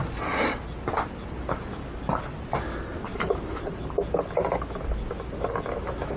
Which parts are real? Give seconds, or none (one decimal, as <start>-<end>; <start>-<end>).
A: 1.5-3.1; 4.0-6.2